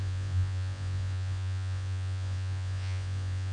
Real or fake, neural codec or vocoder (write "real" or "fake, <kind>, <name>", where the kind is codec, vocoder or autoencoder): fake, vocoder, Vocos